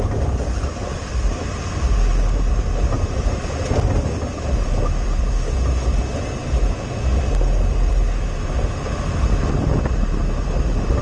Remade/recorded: recorded